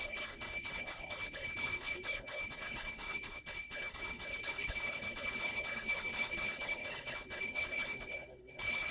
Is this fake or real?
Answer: fake